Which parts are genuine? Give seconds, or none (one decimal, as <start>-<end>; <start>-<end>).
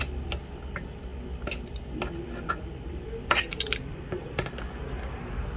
0.0-1.1; 4.5-5.6